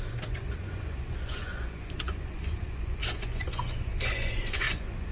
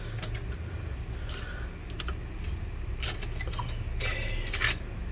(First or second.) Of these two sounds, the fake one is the first